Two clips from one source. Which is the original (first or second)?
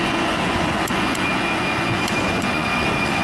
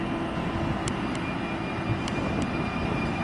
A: second